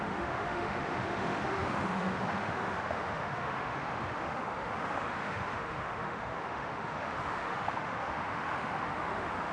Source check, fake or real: fake